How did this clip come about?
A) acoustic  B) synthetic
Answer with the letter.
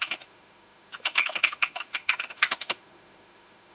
B